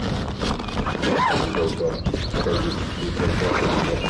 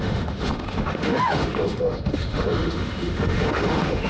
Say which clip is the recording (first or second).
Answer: first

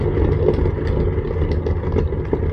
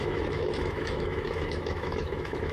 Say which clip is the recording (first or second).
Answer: first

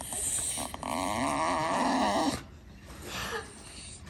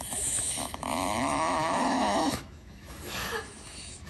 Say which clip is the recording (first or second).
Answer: first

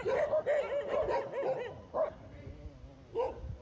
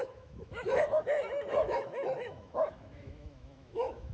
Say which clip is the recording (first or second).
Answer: first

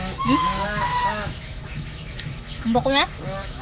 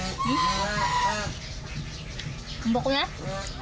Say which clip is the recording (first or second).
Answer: second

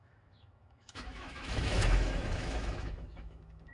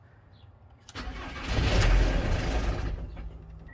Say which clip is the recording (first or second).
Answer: second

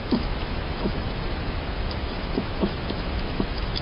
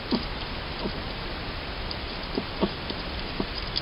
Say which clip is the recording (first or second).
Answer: second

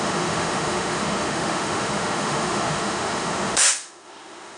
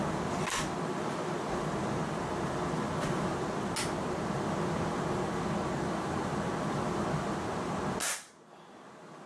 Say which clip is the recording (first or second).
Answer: second